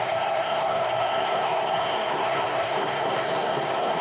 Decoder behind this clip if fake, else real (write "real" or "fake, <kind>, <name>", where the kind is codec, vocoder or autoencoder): fake, codec, SNAC